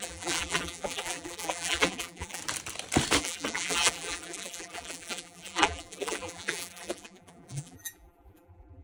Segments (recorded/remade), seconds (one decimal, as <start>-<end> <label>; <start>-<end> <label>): 0.0-2.4 remade; 2.4-3.2 recorded; 3.2-8.8 remade